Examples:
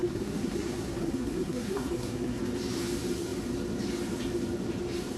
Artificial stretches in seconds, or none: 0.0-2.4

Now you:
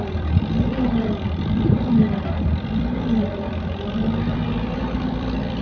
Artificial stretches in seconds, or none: 0.0-5.6

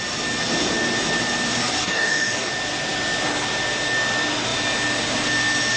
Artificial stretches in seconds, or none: 1.8-2.5

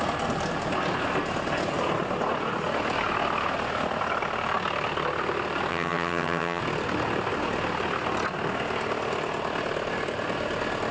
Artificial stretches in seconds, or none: 5.7-6.6

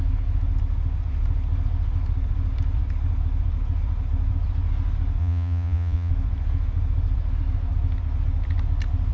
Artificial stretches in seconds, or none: 5.2-6.1

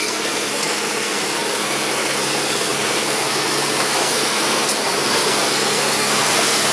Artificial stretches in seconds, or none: 0.0-6.7